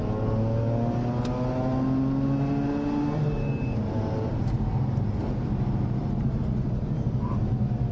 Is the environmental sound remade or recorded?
recorded